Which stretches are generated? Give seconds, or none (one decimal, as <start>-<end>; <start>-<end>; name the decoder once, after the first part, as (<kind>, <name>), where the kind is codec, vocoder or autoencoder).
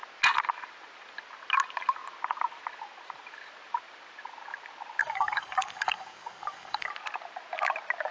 5.0-6.9 (codec, DAC)